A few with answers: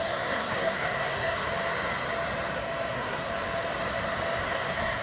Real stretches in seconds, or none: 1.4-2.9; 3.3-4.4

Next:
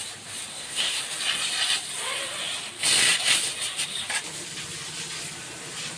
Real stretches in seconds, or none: 0.0-0.5; 1.0-6.0